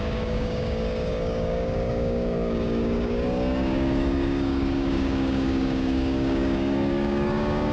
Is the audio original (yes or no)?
no